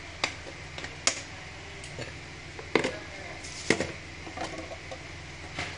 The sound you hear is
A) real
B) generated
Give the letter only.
A